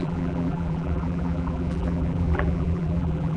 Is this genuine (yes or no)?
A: no